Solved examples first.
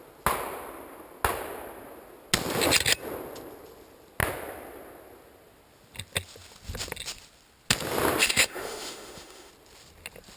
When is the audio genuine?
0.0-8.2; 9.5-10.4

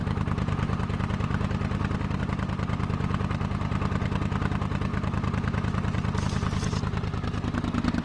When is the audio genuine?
0.0-8.0